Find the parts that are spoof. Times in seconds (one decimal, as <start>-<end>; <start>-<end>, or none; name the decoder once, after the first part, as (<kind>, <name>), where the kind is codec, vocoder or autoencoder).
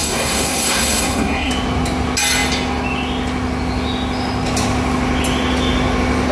0.0-1.5 (codec, SNAC)